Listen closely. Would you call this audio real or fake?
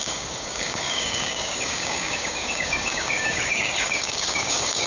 fake